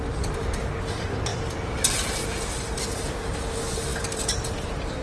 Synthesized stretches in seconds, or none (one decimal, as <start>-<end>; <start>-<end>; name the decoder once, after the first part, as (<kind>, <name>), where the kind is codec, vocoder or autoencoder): 1.3-2.4 (vocoder, BigVGAN v2); 3.9-4.5